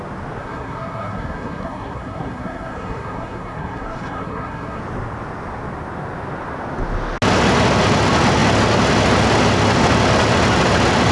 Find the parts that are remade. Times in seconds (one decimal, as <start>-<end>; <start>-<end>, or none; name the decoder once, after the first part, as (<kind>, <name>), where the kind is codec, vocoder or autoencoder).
0.4-4.8 (codec, SNAC)